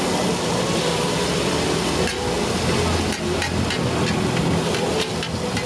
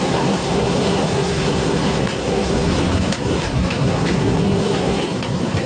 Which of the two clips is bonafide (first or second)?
first